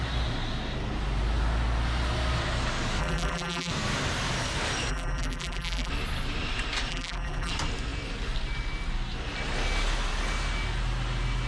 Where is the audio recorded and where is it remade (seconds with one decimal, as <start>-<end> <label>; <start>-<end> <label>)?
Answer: 0.0-3.0 recorded; 3.0-3.7 remade; 3.7-4.9 recorded; 4.9-5.9 remade; 5.9-6.9 recorded; 6.9-7.5 remade; 7.5-11.5 recorded